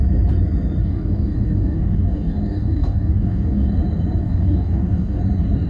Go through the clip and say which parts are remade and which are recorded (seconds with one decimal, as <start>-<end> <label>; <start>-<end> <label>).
0.0-0.8 recorded; 0.8-3.7 remade; 3.7-4.2 recorded; 4.2-5.2 remade; 5.2-5.7 recorded